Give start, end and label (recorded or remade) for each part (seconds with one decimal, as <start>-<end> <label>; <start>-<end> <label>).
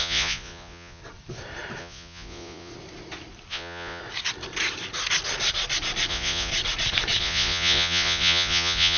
0.0-1.0 remade; 1.0-1.8 recorded; 1.8-2.7 remade; 2.7-3.5 recorded; 3.5-4.0 remade; 4.0-6.1 recorded; 6.1-6.5 remade; 6.5-7.2 recorded; 7.2-9.0 remade